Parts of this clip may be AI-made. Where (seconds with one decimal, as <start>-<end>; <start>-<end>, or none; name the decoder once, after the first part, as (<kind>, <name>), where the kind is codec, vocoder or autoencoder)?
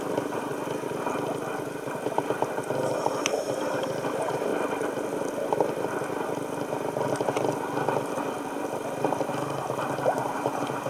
0.0-0.5 (vocoder, BigVGAN v2); 3.1-4.5; 9.3-10.9